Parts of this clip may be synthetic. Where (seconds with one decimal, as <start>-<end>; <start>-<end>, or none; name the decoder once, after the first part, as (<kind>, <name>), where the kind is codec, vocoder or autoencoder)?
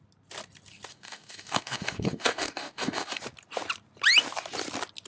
0.9-3.2 (codec, DAC)